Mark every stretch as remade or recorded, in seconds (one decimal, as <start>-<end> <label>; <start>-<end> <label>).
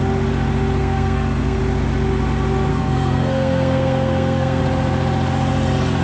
0.0-0.8 recorded; 0.8-1.6 remade; 1.6-2.7 recorded; 2.7-4.6 remade; 4.6-6.0 recorded